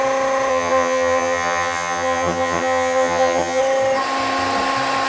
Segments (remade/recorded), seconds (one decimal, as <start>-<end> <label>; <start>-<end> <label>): 0.0-0.5 recorded; 0.5-3.6 remade; 3.6-5.1 recorded